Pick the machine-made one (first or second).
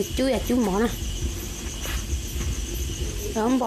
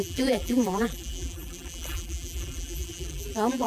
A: second